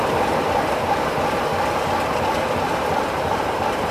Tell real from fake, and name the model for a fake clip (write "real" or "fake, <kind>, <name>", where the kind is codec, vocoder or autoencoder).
real